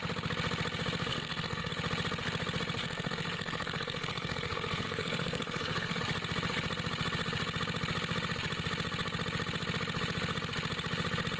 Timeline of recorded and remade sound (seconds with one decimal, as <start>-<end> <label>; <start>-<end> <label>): 0.0-1.1 recorded; 1.1-1.7 remade; 1.7-2.8 recorded; 2.8-6.0 remade; 6.0-11.4 recorded